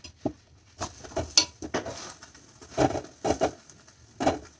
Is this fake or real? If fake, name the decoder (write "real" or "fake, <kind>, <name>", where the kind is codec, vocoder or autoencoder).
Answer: real